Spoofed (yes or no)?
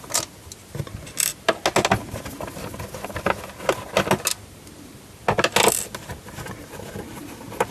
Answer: no